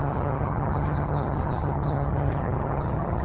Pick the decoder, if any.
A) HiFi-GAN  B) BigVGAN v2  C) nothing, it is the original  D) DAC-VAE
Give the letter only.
A